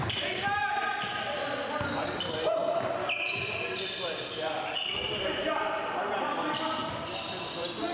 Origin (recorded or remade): recorded